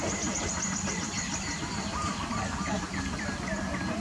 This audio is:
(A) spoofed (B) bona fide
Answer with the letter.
B